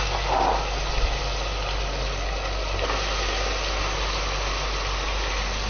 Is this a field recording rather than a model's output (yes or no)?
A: yes